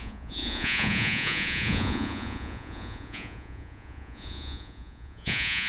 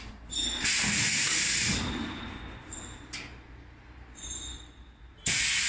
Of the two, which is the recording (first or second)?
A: second